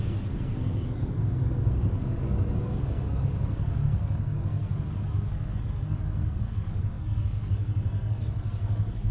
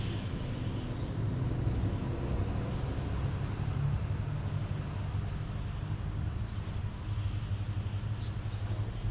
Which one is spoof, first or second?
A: first